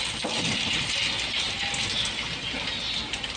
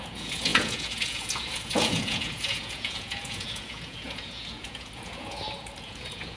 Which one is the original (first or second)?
first